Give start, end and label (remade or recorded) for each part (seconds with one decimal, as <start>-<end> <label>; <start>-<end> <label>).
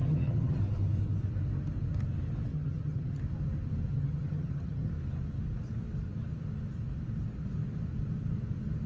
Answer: 0.0-0.6 remade; 0.6-2.5 recorded; 2.5-3.2 remade; 3.2-3.9 recorded; 3.9-4.9 remade; 4.9-8.9 recorded